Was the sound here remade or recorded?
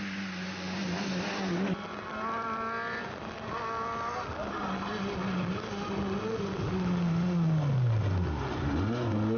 recorded